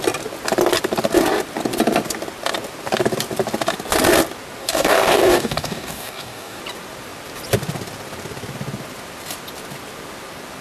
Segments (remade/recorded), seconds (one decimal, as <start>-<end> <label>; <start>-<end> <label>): 0.0-4.6 recorded; 4.6-6.6 remade; 6.6-10.6 recorded

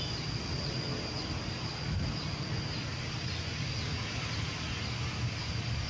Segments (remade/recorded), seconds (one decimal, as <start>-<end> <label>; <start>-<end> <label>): 0.0-5.9 recorded

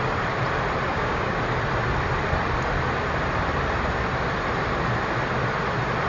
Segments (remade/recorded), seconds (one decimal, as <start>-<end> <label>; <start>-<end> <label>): 0.0-0.9 recorded; 0.9-1.4 remade; 1.4-6.1 recorded

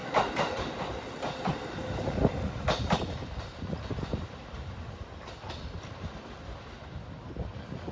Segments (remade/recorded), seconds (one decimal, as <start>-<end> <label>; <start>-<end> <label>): 0.0-7.9 recorded

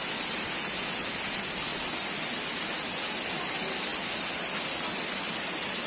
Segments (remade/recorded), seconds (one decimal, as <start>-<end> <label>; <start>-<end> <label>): 0.0-5.9 recorded

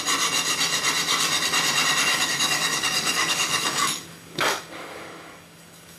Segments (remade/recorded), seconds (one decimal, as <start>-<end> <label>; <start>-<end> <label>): 0.0-2.1 recorded; 2.1-6.0 remade

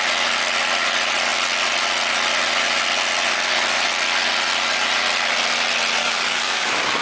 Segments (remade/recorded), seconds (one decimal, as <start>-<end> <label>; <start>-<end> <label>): 0.0-6.0 recorded; 6.0-7.0 remade